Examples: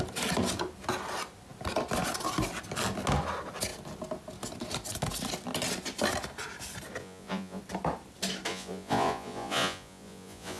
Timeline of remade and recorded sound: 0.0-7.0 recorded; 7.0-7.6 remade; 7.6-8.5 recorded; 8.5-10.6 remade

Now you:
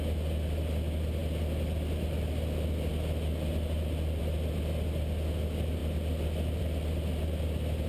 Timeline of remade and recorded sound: 0.0-7.9 recorded

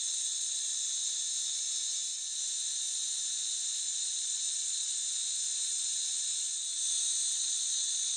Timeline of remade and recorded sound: 0.0-0.7 remade; 0.7-3.8 recorded; 3.8-5.0 remade; 5.0-7.3 recorded; 7.3-8.2 remade

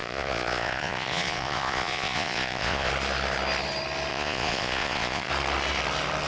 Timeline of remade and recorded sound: 0.0-2.9 remade; 2.9-4.1 recorded; 4.1-5.3 remade; 5.3-6.3 recorded

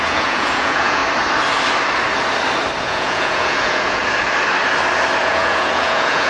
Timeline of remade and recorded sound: 0.0-1.0 remade; 1.0-2.8 recorded; 2.8-4.0 remade; 4.0-5.2 recorded; 5.2-6.3 remade

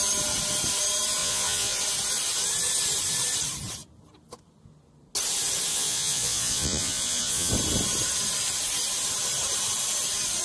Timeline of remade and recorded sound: 0.0-1.2 recorded; 1.2-1.8 remade; 1.8-5.7 recorded; 5.7-7.5 remade; 7.5-10.4 recorded